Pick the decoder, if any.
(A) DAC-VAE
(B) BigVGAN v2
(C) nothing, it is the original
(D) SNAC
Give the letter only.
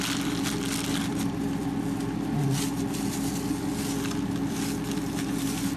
C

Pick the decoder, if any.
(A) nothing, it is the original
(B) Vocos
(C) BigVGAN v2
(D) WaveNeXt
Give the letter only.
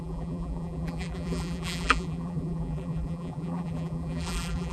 C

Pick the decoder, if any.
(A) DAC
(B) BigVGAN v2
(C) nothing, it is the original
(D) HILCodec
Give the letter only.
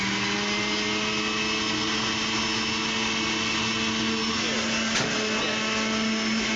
C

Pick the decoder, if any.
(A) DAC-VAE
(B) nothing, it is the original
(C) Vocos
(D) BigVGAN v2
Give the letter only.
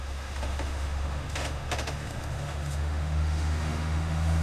A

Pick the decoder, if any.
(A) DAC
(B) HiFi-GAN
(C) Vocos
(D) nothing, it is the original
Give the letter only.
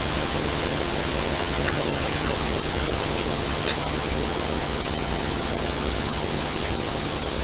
B